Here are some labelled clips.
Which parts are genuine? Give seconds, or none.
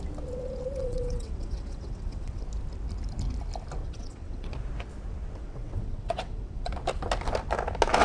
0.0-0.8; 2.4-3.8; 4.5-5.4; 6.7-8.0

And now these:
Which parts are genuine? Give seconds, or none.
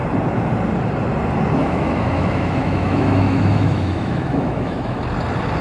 0.0-1.6; 5.0-5.6